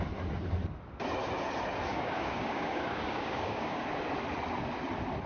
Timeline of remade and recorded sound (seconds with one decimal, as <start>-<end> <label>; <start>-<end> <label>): 0.0-1.9 recorded; 1.9-3.8 remade; 3.8-5.3 recorded

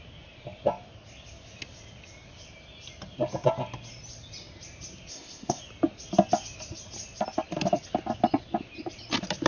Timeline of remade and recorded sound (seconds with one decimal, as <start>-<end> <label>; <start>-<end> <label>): 0.0-5.1 recorded; 5.1-5.6 remade; 5.6-9.5 recorded

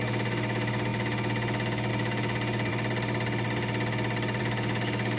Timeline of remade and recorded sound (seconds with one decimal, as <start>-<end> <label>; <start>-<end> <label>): 0.0-2.7 remade; 2.7-4.4 recorded; 4.4-5.2 remade

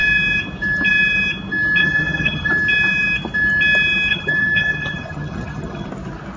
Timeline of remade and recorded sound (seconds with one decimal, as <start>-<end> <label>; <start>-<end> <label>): 0.0-1.8 recorded; 1.8-2.5 remade; 2.5-4.1 recorded; 4.1-5.9 remade; 5.9-6.4 recorded

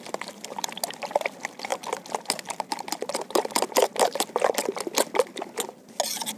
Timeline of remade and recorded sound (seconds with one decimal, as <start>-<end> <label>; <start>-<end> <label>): 0.0-6.4 recorded